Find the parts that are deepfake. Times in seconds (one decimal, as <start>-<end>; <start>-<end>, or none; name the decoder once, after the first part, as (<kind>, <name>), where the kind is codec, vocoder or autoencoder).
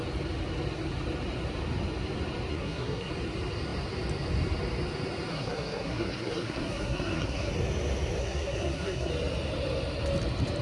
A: 2.5-3.1 (codec, SNAC); 5.3-7.5; 8.2-9.1